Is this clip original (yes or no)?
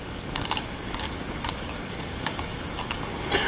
no